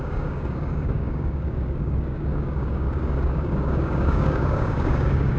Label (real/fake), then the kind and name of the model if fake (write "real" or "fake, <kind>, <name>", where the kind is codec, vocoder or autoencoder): fake, codec, DAC